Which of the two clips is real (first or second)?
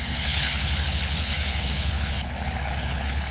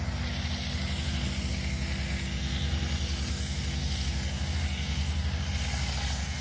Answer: second